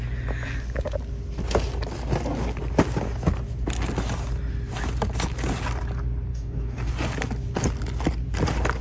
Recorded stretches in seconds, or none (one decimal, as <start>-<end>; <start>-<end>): 0.0-6.3; 6.9-8.8